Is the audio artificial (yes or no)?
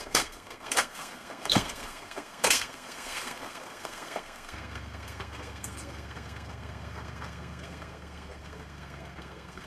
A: yes